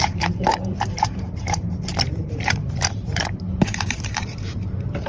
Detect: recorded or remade remade